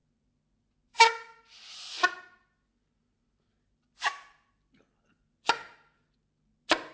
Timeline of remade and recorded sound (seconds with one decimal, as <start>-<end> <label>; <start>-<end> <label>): 0.0-3.0 recorded; 3.0-5.2 remade; 5.2-6.9 recorded